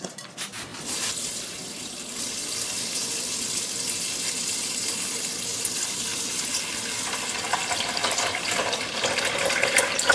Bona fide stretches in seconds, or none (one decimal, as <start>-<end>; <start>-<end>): 0.7-4.3; 6.1-7.8